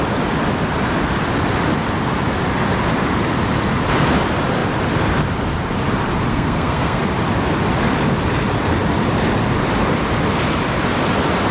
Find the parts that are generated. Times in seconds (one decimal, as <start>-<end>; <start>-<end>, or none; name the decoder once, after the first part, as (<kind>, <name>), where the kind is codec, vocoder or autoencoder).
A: 6.3-7.0 (codec, SNAC)